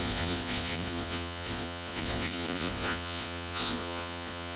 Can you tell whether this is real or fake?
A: fake